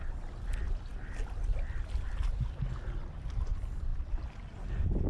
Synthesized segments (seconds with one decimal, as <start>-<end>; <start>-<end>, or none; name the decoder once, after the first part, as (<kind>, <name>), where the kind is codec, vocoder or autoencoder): none